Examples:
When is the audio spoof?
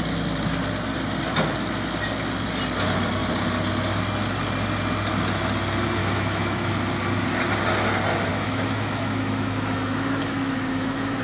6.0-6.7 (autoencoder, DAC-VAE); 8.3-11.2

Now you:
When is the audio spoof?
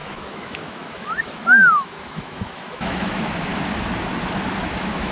0.0-3.5 (autoencoder, DAC-VAE); 4.6-5.1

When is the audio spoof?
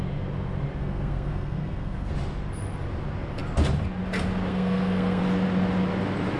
0.8-2.1 (codec, SNAC); 4.5-5.2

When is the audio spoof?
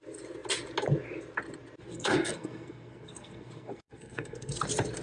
1.9-4.6 (codec, SNAC)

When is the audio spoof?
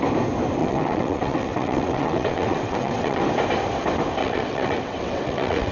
0.6-3.2 (vocoder, WaveNeXt); 4.2-5.7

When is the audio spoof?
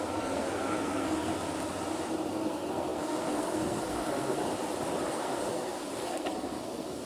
0.0-1.3 (codec, SNAC); 2.3-4.4; 5.1-7.1